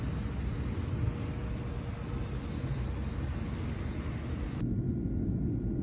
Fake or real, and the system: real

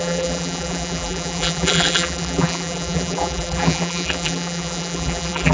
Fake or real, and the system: fake, vocoder, BigVGAN v2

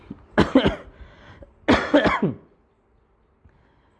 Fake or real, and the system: real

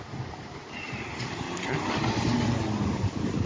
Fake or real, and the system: real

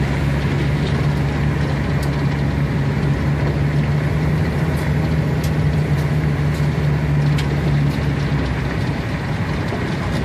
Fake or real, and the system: real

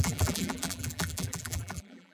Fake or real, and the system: fake, vocoder, BigVGAN v2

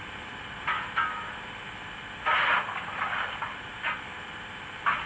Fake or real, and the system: real